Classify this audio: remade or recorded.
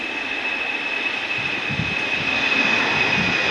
recorded